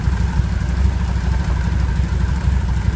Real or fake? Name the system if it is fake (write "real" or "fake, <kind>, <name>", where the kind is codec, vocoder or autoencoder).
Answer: real